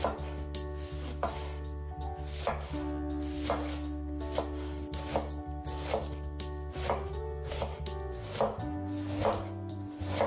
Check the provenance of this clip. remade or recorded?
recorded